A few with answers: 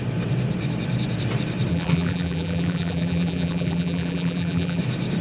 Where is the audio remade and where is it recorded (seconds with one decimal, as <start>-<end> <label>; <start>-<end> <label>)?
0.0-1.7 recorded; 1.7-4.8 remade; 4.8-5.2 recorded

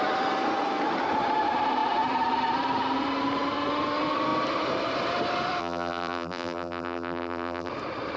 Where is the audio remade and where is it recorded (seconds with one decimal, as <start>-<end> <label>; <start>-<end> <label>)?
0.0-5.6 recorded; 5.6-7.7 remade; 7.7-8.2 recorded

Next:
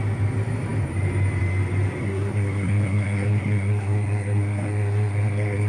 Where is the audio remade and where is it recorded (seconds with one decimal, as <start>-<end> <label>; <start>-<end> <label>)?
0.0-2.0 recorded; 2.0-5.7 remade